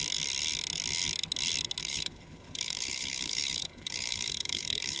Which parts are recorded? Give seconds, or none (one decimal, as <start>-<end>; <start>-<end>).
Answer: 0.0-1.8